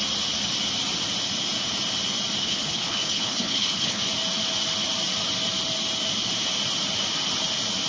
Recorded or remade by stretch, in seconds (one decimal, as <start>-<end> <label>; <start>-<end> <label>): 0.0-2.4 recorded; 2.4-4.0 remade; 4.0-7.9 recorded